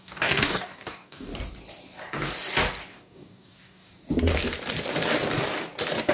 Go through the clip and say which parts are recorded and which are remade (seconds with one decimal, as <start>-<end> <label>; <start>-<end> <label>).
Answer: 0.0-1.3 remade; 1.3-2.9 recorded; 2.9-3.9 remade; 3.9-6.1 recorded